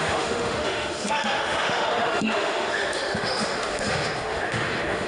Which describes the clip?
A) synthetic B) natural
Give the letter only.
A